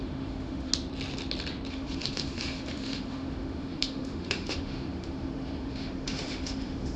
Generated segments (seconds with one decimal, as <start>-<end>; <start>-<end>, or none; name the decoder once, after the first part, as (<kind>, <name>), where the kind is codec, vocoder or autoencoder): 0.0-0.7 (autoencoder, DAC-VAE); 1.7-7.0